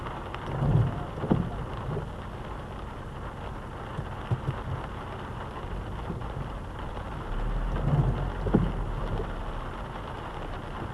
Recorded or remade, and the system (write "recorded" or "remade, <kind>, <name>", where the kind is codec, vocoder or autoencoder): recorded